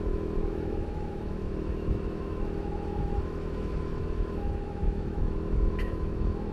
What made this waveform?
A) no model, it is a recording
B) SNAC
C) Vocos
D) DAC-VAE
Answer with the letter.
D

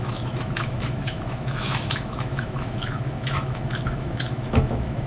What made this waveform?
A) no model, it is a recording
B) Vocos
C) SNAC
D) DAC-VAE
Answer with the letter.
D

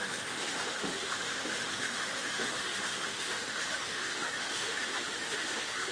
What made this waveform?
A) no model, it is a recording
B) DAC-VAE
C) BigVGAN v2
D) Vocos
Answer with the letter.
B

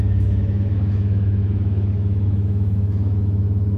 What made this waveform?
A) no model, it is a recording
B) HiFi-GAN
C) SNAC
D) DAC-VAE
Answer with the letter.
D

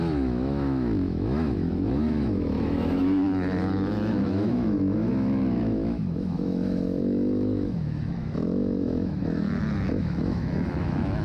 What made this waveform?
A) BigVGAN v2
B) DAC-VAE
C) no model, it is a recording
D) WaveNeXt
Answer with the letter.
B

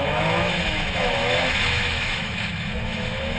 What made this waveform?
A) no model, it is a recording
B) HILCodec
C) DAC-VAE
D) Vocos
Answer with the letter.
C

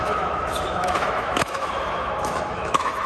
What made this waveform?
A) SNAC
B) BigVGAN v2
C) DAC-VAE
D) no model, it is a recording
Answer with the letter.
C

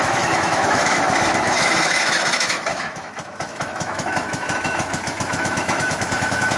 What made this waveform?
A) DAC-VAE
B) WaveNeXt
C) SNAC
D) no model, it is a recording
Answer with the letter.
A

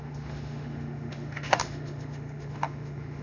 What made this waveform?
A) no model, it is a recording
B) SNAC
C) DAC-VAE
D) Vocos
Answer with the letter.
C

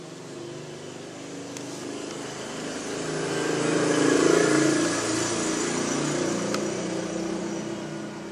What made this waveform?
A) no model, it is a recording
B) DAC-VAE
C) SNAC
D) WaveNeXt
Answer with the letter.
A